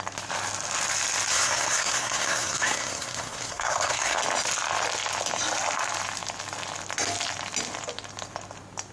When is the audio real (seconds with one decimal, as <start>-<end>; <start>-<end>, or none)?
0.0-1.3; 4.2-8.9